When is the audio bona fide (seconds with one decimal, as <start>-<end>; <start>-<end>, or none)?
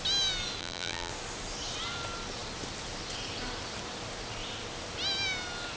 0.0-0.6; 1.1-5.8